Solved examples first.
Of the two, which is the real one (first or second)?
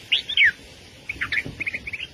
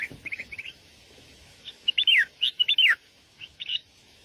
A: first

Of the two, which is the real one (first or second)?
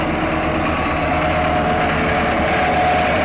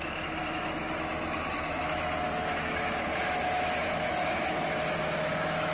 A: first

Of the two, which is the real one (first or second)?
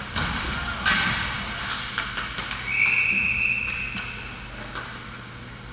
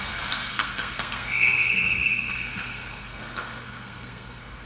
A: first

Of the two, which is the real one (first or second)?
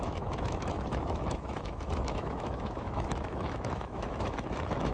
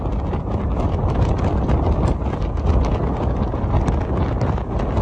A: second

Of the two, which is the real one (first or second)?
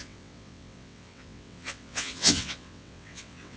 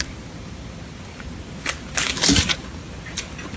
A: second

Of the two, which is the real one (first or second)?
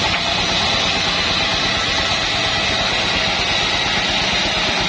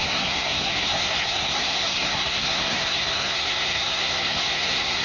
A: first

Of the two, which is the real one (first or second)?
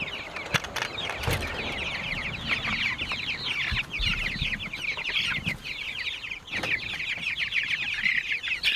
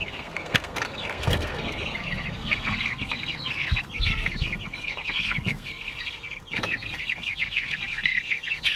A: first